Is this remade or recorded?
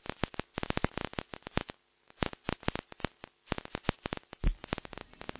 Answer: recorded